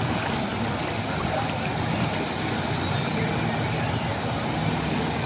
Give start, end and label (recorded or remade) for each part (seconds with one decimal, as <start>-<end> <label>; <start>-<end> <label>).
0.0-5.3 recorded